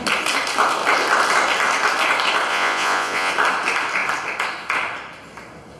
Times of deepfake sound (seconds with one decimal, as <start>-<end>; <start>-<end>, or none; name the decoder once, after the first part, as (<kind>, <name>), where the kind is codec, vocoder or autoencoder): 2.5-3.3 (vocoder, Vocos)